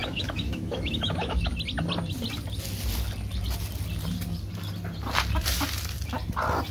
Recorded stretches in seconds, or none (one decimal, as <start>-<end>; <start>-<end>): 1.5-6.7